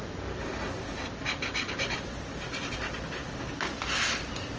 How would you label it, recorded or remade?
recorded